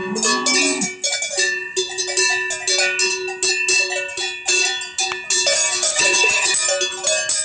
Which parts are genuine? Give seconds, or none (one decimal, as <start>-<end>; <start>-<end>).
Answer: 0.0-5.9; 6.5-7.4